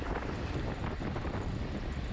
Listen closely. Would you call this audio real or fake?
fake